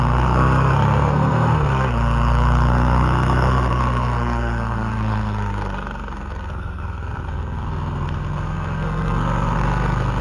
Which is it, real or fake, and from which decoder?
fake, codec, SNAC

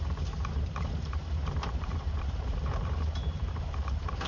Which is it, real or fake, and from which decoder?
fake, vocoder, BigVGAN v2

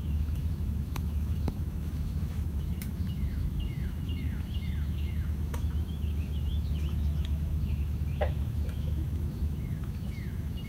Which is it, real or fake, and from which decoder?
fake, autoencoder, DAC-VAE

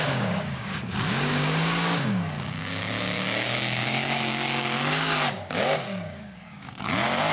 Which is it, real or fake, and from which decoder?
fake, codec, DAC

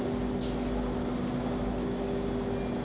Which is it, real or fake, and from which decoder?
real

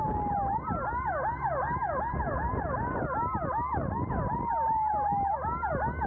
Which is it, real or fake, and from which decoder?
real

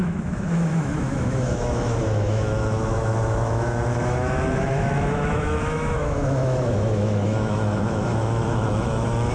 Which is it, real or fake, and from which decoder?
fake, autoencoder, DAC-VAE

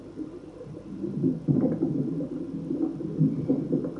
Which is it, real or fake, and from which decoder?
real